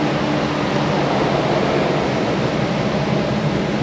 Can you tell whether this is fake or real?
real